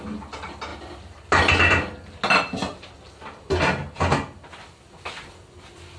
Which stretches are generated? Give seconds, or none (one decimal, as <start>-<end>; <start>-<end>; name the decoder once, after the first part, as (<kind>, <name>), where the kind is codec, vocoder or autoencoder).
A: none